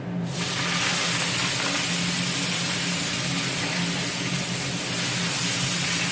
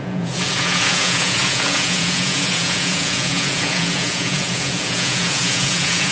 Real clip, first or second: first